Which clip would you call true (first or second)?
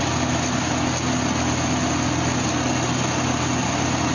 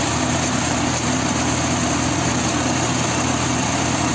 first